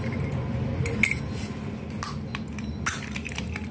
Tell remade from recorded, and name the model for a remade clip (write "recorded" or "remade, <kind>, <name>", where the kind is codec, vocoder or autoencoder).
recorded